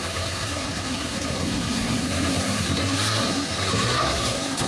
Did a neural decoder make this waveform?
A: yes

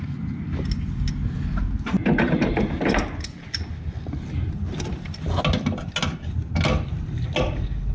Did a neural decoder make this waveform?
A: no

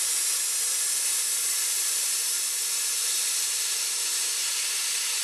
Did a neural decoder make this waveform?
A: no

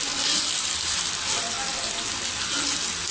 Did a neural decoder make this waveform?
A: no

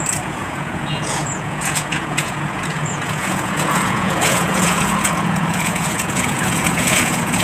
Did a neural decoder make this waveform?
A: yes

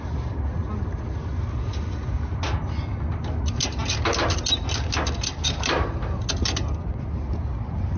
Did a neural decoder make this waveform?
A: no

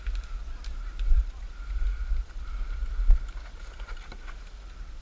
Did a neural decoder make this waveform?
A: no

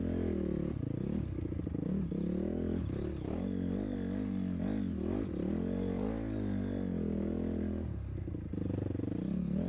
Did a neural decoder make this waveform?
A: no